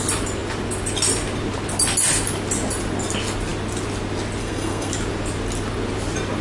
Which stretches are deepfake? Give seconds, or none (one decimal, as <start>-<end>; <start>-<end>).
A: 4.4-4.9